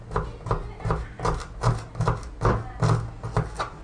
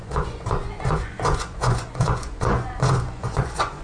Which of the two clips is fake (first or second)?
second